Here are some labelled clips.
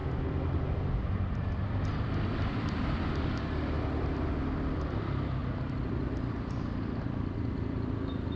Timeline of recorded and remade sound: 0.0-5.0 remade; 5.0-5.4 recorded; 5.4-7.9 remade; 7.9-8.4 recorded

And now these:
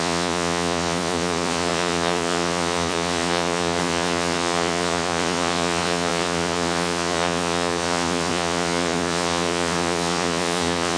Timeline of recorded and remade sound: 0.0-11.0 remade

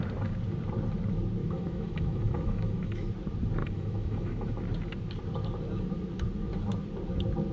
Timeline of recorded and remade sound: 0.0-1.4 recorded; 1.4-3.1 remade; 3.1-3.6 recorded; 3.6-4.6 remade; 4.6-7.5 recorded

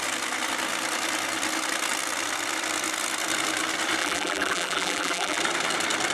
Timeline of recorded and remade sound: 0.0-4.0 recorded; 4.0-5.4 remade; 5.4-6.1 recorded

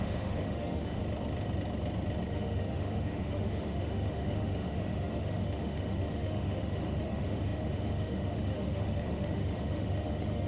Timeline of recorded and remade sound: 0.0-1.0 remade; 1.0-2.3 recorded; 2.3-10.5 remade

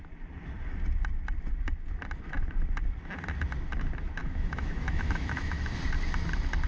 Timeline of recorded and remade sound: 0.0-4.2 recorded; 4.2-5.8 remade; 5.8-6.7 recorded

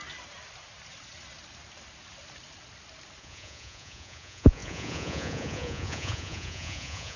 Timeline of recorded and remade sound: 0.0-3.2 recorded; 3.2-7.2 remade

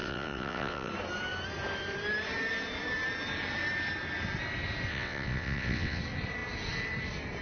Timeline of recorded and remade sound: 0.0-0.9 remade; 0.9-4.9 recorded; 4.9-6.0 remade; 6.0-7.4 recorded